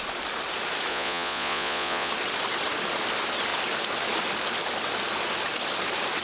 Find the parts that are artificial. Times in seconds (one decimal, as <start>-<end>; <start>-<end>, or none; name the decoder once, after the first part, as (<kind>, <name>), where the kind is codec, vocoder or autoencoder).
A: 0.9-2.1 (vocoder, Vocos)